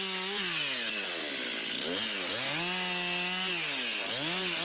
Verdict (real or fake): real